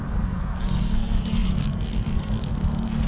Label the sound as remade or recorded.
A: remade